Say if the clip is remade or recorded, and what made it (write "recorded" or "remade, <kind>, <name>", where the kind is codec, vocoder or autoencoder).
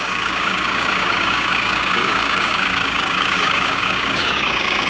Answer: remade, codec, DAC